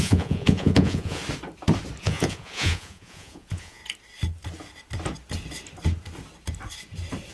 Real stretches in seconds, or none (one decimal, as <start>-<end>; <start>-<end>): 1.2-2.0; 3.8-7.3